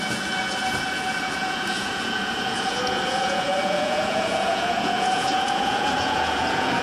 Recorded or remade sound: remade